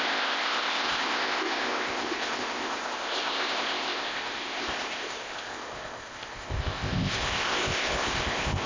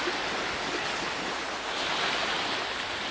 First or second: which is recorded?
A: second